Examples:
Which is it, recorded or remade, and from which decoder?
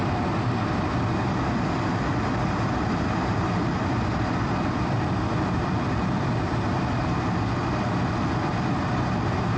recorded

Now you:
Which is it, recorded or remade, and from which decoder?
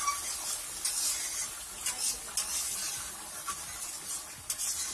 recorded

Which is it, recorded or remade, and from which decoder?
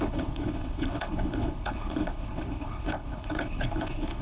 remade, codec, HILCodec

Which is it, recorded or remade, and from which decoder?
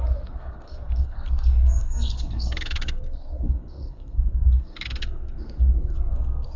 remade, codec, SNAC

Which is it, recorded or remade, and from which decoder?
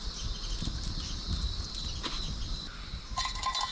recorded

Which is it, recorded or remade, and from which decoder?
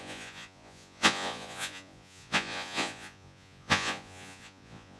remade, vocoder, Vocos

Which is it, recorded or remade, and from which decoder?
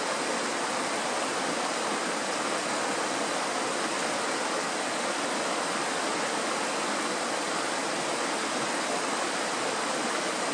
recorded